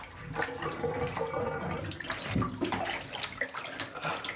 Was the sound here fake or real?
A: real